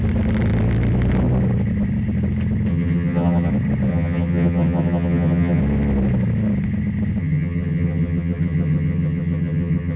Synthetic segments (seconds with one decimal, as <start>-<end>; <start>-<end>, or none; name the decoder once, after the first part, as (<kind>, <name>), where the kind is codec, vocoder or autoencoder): 2.7-3.5 (vocoder, HiFi-GAN); 3.9-5.6; 7.2-10.0